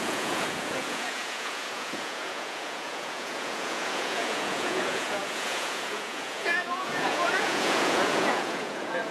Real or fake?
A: fake